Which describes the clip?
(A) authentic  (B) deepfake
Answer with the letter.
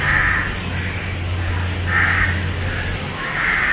A